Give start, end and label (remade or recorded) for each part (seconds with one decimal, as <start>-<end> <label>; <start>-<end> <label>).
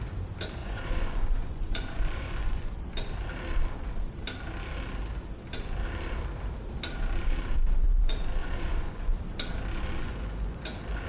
0.0-0.6 recorded; 0.6-2.7 remade; 2.7-8.4 recorded; 8.4-9.2 remade; 9.2-10.0 recorded; 10.0-10.6 remade; 10.6-11.1 recorded